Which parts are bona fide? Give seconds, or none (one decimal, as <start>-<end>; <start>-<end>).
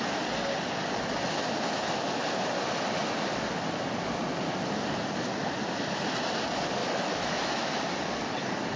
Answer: 0.0-6.8; 7.7-8.8